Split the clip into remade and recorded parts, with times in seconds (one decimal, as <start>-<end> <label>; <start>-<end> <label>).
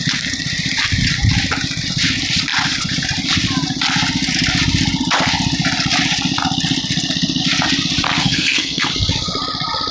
0.0-8.2 recorded; 8.2-8.9 remade; 8.9-9.9 recorded